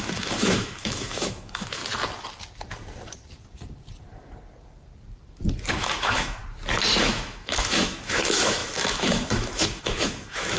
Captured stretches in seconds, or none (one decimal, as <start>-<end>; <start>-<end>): 1.8-5.7; 6.4-7.0